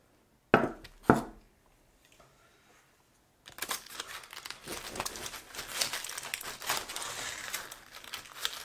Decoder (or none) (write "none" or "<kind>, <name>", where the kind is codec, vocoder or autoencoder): none